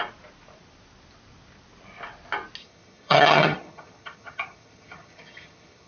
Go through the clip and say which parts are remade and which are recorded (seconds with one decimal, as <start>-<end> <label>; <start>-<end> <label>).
0.0-2.6 recorded; 2.6-5.9 remade